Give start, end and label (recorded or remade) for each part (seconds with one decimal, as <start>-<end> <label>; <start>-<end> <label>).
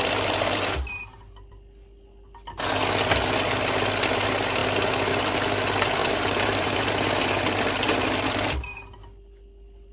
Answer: 0.0-6.0 recorded; 6.0-6.9 remade; 6.9-9.9 recorded